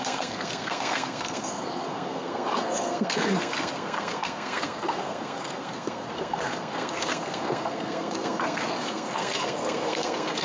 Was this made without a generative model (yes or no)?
no